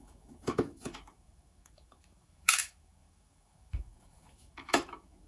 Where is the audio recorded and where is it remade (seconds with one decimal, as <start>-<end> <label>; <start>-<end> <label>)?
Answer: 0.0-5.3 remade